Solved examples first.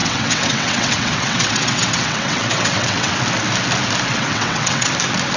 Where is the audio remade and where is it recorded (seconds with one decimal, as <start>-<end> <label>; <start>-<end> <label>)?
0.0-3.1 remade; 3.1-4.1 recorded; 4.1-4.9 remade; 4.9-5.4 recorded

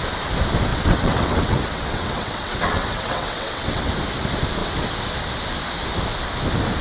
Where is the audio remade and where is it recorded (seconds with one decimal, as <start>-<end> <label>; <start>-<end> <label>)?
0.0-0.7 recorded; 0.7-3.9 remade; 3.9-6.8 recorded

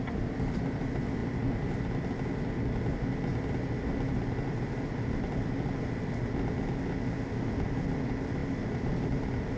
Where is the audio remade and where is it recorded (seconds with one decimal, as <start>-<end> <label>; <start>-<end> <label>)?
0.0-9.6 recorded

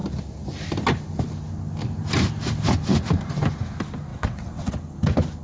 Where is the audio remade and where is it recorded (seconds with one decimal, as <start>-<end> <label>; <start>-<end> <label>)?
0.0-4.1 recorded; 4.1-4.7 remade; 4.7-5.4 recorded